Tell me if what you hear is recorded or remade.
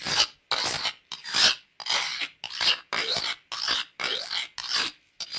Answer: recorded